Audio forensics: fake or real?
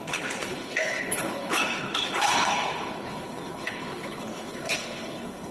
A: fake